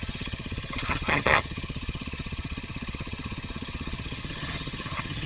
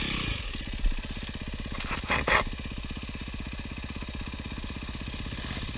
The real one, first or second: second